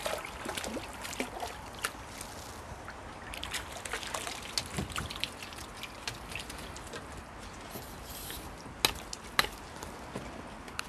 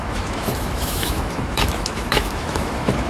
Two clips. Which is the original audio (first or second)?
first